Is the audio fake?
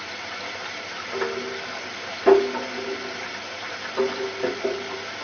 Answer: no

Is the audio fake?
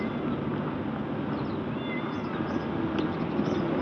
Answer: no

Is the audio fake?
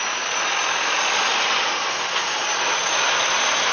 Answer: no